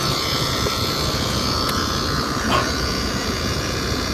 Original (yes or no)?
no